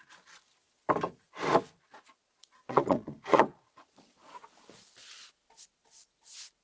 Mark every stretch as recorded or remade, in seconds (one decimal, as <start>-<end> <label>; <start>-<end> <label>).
0.0-2.2 recorded; 2.2-4.4 remade; 4.4-6.6 recorded